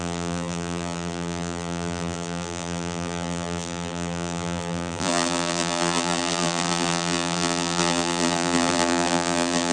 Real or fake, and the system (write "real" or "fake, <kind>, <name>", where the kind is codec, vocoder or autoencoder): fake, vocoder, BigVGAN v2